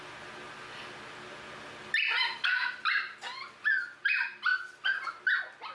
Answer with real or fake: real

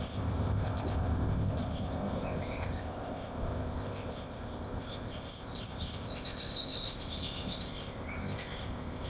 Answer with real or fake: fake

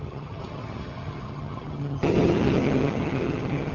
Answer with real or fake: fake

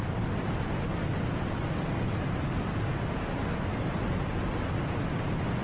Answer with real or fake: real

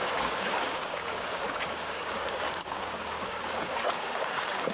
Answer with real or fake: fake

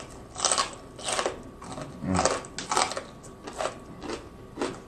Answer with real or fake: real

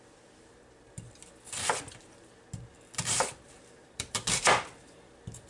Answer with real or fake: fake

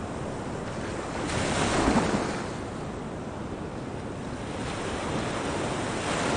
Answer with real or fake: real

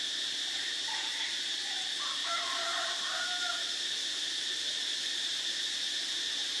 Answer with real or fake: fake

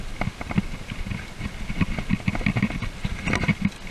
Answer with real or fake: real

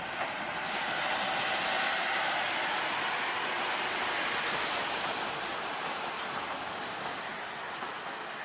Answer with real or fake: real